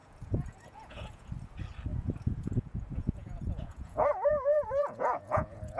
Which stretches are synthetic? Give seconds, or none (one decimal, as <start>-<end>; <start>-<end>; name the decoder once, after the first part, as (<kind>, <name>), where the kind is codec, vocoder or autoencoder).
0.0-1.3 (vocoder, Vocos); 1.9-5.8